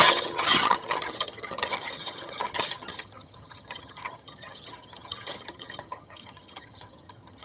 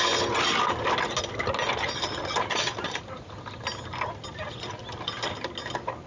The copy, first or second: first